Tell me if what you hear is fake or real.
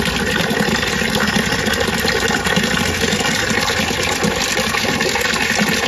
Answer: real